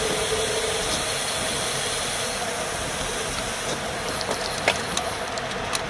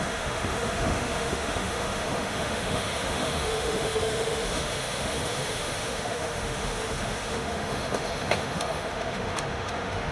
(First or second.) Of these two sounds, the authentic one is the first